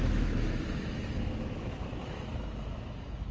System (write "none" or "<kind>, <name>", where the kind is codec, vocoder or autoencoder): autoencoder, DAC-VAE